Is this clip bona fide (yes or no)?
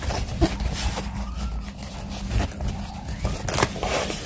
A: yes